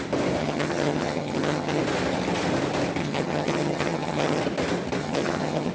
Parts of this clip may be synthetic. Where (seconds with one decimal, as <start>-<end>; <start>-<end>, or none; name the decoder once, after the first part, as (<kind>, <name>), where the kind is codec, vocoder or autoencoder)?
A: 0.4-1.8 (vocoder, HiFi-GAN); 3.0-4.4; 5.0-5.7